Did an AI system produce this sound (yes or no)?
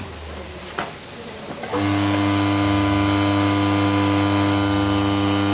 no